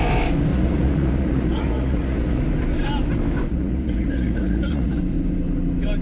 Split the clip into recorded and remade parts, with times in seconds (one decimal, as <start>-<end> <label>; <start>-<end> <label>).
0.0-0.5 recorded; 0.5-2.4 remade; 2.4-3.5 recorded; 3.5-5.0 remade; 5.0-6.0 recorded